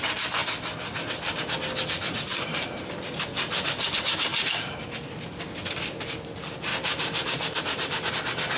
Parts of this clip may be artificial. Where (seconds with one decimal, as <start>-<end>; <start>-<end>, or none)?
4.3-4.8; 6.7-8.1